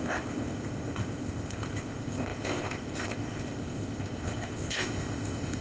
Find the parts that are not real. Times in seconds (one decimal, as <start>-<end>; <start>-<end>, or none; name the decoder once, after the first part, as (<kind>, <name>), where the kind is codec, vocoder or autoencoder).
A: 0.0-5.6 (codec, ZipCodec)